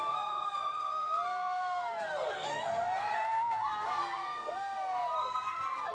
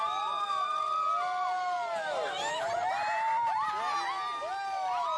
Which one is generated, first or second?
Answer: first